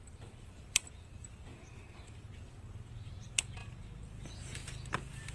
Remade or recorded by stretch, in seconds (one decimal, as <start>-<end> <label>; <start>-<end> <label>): 0.0-5.3 remade